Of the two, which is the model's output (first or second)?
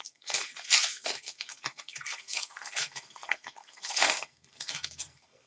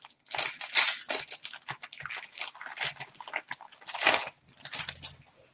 first